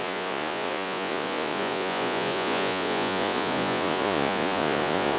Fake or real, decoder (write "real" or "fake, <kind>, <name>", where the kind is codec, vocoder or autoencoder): fake, vocoder, Vocos